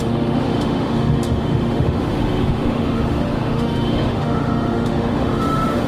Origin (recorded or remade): remade